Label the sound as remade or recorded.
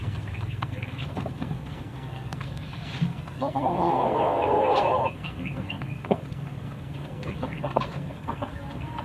remade